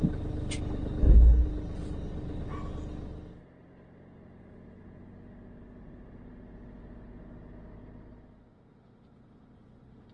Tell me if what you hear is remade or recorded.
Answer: recorded